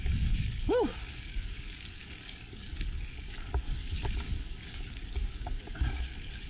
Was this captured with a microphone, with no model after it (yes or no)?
no